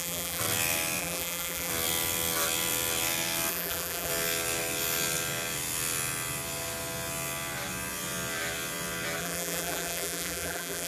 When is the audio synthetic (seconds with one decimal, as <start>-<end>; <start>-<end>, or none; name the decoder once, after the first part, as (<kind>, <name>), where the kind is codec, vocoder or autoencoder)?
0.0-0.4 (vocoder, BigVGAN v2); 1.0-1.7; 3.5-4.1; 9.2-10.9